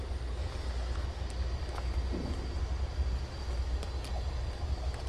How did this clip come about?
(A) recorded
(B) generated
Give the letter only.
A